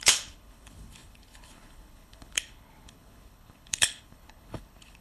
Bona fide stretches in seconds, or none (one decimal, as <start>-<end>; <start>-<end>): none